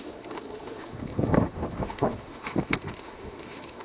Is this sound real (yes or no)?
no